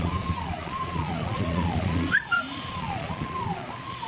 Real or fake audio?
fake